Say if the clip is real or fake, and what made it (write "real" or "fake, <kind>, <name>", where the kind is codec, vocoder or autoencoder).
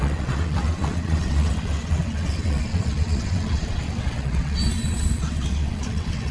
fake, vocoder, WaveNeXt